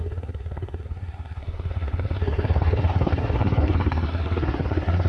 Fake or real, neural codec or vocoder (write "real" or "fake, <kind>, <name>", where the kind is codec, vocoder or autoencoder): fake, codec, SNAC